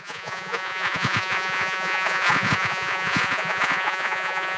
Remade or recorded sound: remade